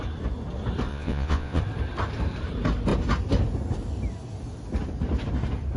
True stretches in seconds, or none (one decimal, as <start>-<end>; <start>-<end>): 0.0-0.9; 1.6-5.8